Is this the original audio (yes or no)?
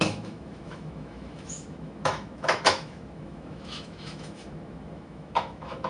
no